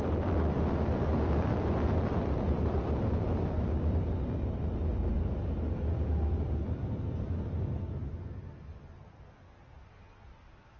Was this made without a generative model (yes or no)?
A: no